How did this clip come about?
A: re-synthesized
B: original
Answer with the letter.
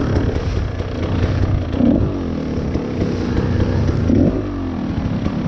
B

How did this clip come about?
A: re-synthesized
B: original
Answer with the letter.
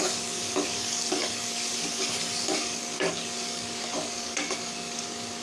A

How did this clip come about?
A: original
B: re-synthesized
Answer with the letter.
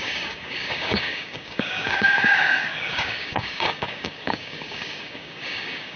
B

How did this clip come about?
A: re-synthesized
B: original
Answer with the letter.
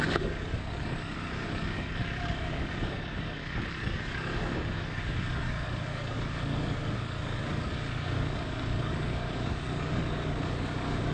A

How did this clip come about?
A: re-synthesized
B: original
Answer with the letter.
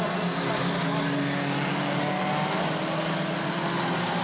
B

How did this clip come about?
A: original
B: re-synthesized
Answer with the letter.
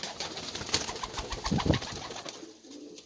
A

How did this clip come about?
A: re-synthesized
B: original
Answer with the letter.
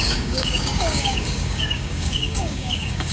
A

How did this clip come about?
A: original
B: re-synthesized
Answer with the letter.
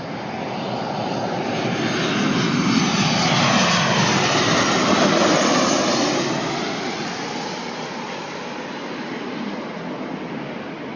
A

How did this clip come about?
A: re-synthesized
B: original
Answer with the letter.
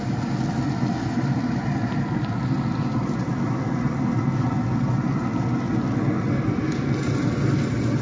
B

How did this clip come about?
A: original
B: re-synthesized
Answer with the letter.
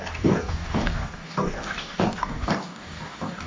B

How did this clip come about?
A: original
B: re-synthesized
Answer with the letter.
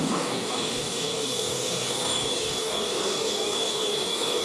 B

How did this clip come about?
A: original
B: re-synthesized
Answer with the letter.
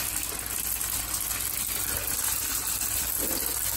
A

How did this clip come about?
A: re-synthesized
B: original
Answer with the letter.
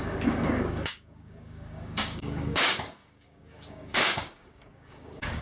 A